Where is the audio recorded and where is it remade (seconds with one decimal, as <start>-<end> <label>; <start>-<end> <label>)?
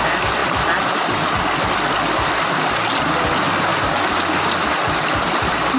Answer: 0.0-5.8 recorded